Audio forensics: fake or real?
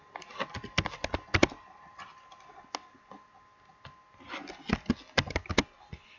real